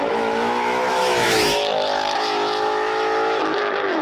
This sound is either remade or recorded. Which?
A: remade